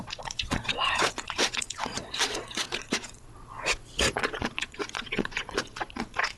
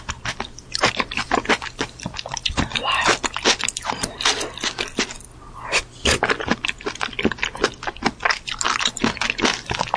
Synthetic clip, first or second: first